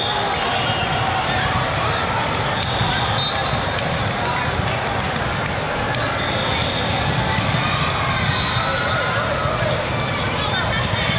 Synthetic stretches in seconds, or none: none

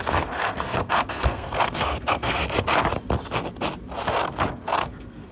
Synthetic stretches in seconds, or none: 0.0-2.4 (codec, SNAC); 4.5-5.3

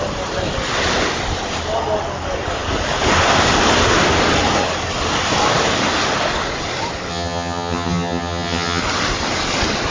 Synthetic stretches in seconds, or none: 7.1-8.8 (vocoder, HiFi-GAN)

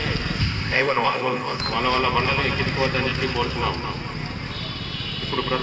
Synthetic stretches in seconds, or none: 0.4-1.6 (codec, ZipCodec)

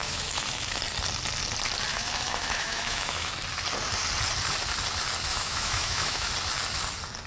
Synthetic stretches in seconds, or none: 0.0-0.8 (autoencoder, DAC-VAE); 1.9-3.3; 5.3-6.3

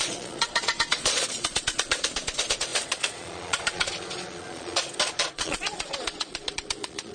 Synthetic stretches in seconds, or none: 0.0-7.1 (vocoder, Vocos)